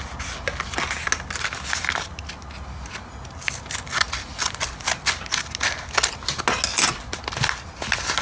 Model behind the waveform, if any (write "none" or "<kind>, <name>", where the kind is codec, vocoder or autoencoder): none